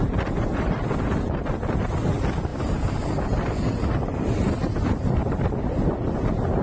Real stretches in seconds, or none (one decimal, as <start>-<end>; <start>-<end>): 0.0-6.6